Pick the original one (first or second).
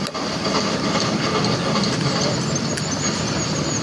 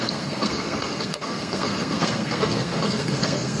first